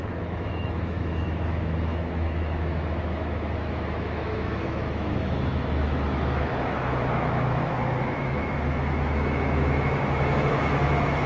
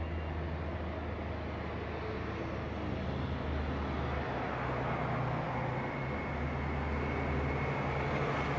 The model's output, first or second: first